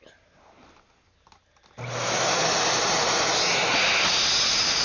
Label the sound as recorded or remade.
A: recorded